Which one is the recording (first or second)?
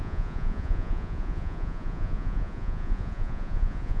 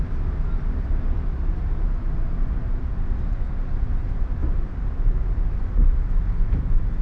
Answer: second